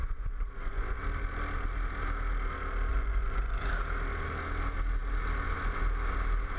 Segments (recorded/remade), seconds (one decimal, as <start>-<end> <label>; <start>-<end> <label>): 0.0-1.0 remade; 1.0-2.9 recorded; 2.9-3.7 remade; 3.7-6.6 recorded